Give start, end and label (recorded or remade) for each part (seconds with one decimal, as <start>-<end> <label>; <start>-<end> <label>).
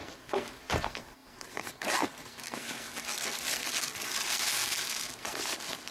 0.0-5.9 remade